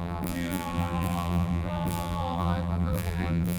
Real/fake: fake